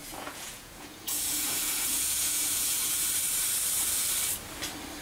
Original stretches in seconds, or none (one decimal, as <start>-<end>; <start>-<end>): 3.0-5.0